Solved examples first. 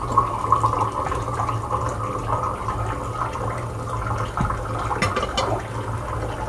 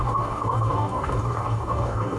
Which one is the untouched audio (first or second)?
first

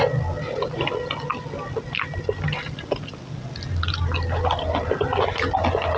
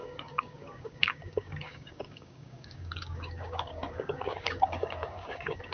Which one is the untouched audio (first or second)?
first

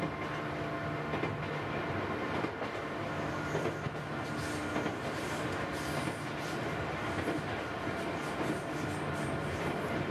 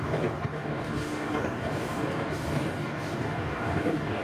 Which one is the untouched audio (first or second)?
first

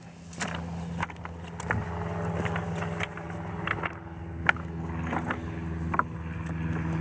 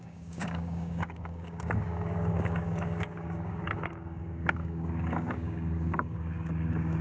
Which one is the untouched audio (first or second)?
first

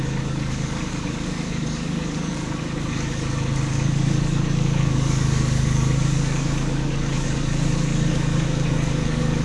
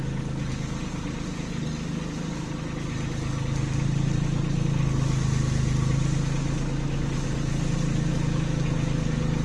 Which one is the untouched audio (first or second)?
second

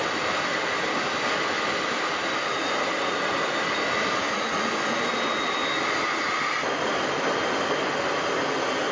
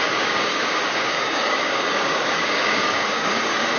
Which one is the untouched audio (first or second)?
first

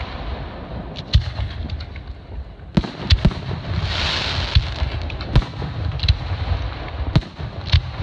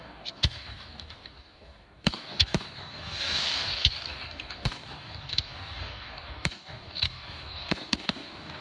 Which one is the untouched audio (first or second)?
first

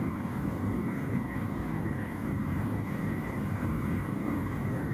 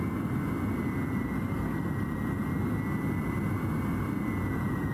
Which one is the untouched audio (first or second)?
second